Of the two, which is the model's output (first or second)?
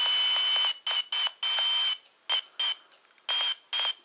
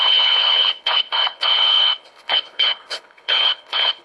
second